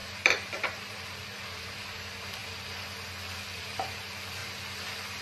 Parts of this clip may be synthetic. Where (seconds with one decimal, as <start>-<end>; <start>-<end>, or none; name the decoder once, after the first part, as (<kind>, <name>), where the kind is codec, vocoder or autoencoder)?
0.0-2.4 (vocoder, BigVGAN v2); 3.6-4.4